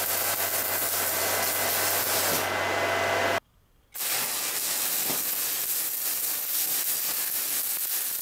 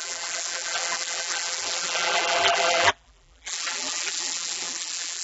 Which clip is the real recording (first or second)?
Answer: first